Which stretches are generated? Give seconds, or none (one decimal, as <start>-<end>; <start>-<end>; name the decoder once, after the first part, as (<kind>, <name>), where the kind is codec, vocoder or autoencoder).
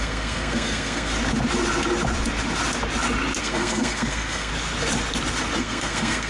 0.0-1.1 (codec, SNAC); 3.4-4.5; 5.6-6.3